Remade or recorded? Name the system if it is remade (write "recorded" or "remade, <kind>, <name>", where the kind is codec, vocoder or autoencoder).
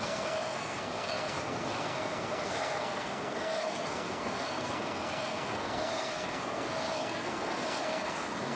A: remade, codec, SNAC